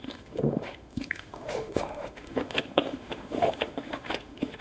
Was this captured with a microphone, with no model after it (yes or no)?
no